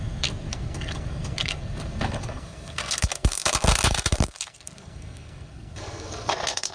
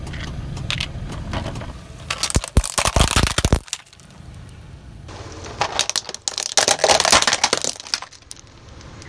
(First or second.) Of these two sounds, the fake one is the first